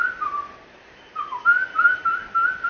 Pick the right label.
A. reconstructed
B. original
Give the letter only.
B